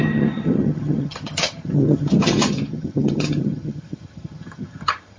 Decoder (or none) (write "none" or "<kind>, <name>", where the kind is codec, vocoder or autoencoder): vocoder, HiFi-GAN